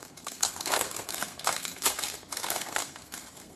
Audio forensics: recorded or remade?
remade